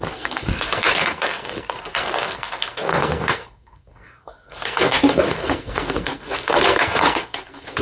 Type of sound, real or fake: fake